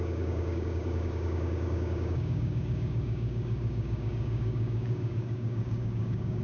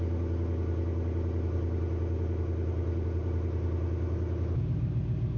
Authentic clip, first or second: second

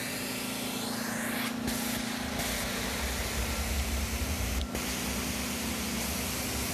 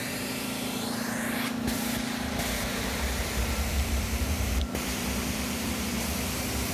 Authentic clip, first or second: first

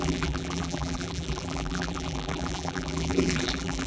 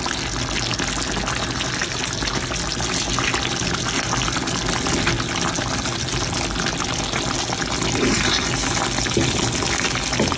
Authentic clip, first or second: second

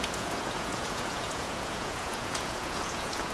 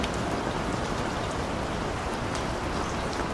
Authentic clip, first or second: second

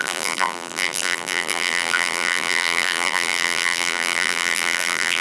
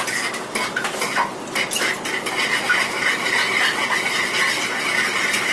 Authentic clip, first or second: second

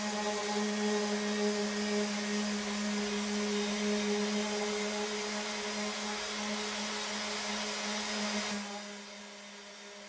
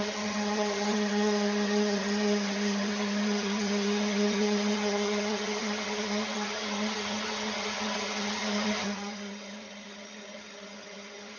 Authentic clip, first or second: first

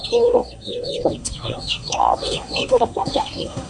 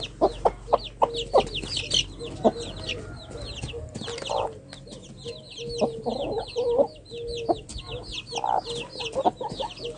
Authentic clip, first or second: second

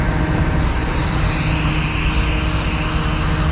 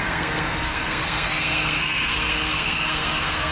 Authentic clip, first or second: first